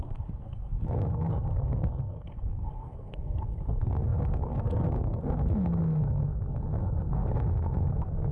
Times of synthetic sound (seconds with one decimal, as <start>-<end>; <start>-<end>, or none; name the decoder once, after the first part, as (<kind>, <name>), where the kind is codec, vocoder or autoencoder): 0.0-8.3 (codec, SNAC)